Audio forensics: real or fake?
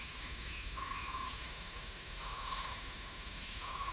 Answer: fake